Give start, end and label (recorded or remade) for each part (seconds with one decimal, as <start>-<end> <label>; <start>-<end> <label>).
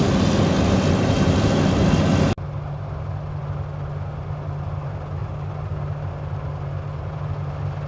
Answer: 0.0-7.9 recorded